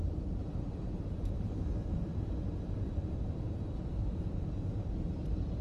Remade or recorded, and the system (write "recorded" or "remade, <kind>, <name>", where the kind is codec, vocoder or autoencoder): remade, vocoder, BigVGAN v2